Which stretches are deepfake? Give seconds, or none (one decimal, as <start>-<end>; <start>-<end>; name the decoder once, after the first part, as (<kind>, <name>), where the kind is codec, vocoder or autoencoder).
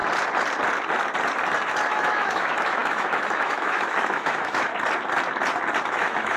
1.9-4.7 (autoencoder, DAC-VAE); 5.8-6.4